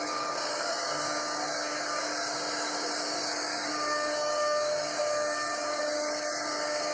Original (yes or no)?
no